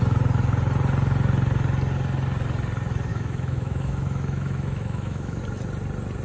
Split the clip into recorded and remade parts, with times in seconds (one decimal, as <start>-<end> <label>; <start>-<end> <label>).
0.0-3.1 recorded; 3.1-5.4 remade; 5.4-6.2 recorded